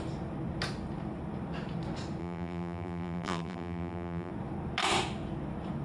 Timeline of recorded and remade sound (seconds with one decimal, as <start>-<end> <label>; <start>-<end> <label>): 0.0-2.2 recorded; 2.2-4.3 remade; 4.3-5.8 recorded